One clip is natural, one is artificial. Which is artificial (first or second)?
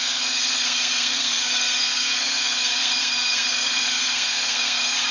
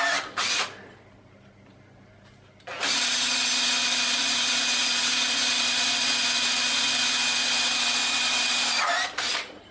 first